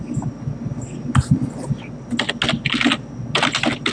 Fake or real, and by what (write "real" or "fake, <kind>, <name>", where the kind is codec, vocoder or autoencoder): real